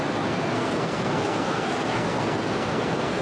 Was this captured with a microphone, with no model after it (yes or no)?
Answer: no